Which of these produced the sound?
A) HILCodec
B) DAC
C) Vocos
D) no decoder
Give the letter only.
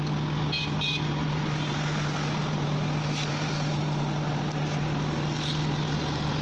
D